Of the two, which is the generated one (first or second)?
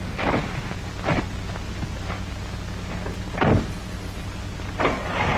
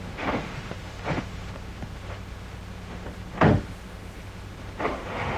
second